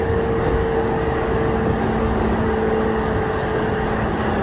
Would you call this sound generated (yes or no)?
yes